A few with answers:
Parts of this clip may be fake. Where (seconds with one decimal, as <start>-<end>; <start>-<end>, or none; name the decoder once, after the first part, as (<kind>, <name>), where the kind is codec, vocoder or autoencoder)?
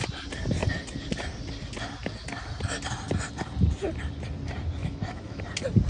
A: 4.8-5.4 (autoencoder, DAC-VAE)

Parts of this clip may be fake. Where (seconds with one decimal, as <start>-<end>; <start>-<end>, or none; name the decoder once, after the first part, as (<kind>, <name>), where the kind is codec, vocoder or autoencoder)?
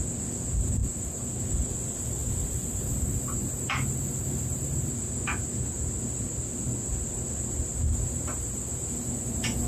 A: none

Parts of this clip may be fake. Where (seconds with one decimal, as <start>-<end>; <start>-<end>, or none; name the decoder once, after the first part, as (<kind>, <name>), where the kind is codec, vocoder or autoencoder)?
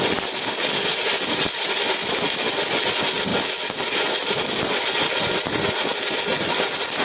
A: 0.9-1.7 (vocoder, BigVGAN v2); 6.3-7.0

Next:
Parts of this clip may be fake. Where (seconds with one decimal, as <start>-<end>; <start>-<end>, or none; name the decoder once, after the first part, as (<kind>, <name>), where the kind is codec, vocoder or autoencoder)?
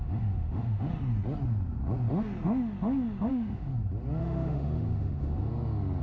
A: 0.0-0.9 (autoencoder, DAC-VAE); 3.3-3.7; 4.2-5.5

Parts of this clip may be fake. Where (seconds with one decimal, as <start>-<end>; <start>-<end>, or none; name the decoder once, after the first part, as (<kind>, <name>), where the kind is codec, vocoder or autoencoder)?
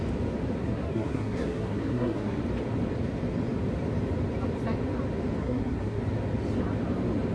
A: 0.6-2.4 (codec, SNAC); 5.4-6.0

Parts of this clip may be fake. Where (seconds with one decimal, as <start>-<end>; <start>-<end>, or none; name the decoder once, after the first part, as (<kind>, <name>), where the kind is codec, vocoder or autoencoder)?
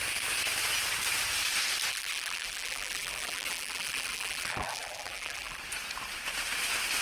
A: 1.9-5.6 (vocoder, BigVGAN v2)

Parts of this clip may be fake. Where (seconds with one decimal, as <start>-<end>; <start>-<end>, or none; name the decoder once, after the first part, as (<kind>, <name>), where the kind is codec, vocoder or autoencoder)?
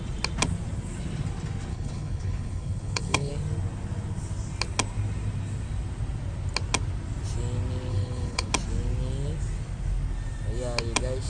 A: 1.7-3.3 (codec, HILCodec); 7.9-8.5